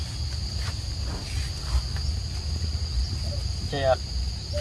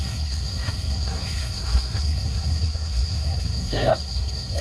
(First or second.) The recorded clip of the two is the first